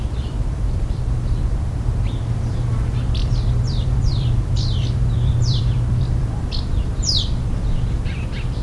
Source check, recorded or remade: remade